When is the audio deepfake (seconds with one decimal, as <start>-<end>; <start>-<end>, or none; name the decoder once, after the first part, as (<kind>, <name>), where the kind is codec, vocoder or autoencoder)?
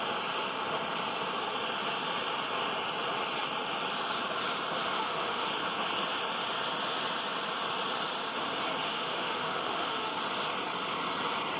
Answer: 5.0-5.5 (autoencoder, DAC-VAE); 8.8-10.1